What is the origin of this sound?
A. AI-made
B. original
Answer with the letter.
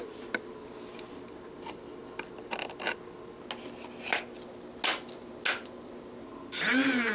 B